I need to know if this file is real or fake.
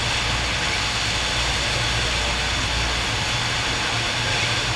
real